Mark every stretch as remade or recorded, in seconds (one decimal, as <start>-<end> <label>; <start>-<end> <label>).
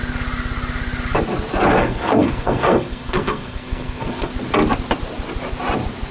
0.0-1.8 recorded; 1.8-4.3 remade; 4.3-6.1 recorded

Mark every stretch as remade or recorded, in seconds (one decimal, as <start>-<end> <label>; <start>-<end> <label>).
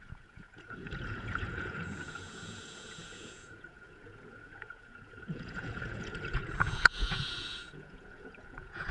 0.0-8.9 remade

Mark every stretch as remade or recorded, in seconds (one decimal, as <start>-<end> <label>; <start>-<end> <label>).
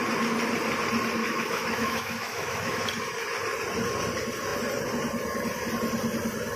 0.0-1.2 recorded; 1.2-2.8 remade; 2.8-6.6 recorded